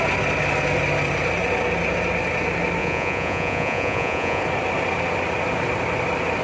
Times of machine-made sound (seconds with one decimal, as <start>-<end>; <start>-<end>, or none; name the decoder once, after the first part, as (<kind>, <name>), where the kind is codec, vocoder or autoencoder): 2.8-4.4 (vocoder, Vocos)

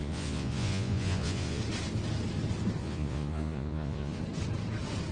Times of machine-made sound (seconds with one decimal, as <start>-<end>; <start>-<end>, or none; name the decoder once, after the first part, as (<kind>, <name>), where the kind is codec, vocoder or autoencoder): 0.0-1.6 (vocoder, Vocos); 2.8-4.2

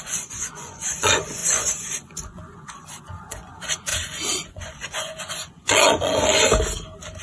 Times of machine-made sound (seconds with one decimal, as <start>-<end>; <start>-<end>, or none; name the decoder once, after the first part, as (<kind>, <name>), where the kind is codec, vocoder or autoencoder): 0.0-6.3 (vocoder, Vocos)

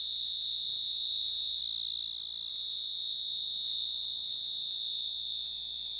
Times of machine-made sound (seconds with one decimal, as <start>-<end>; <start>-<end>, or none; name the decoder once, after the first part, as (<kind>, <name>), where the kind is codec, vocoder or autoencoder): 0.0-1.6 (vocoder, Vocos); 2.5-6.0

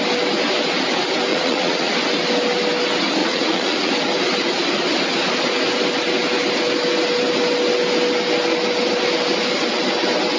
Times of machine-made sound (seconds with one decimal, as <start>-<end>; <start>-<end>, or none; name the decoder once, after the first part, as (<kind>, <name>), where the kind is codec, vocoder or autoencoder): 1.3-1.9 (vocoder, Vocos); 3.2-3.9

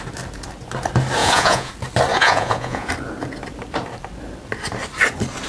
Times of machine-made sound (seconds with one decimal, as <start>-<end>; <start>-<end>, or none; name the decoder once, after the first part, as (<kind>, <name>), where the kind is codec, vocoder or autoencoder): 1.2-1.7 (vocoder, Vocos); 2.1-2.9

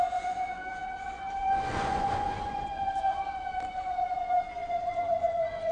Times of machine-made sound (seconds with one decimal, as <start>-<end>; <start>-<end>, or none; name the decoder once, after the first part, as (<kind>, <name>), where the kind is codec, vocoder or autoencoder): 0.0-5.7 (vocoder, Vocos)

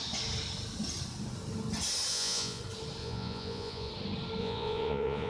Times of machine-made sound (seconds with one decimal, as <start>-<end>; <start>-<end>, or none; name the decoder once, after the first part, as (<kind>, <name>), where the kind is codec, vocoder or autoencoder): 2.1-2.6 (vocoder, Vocos); 3.0-3.9; 4.4-5.3